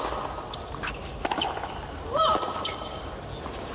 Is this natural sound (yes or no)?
yes